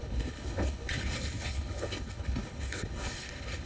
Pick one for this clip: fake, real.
fake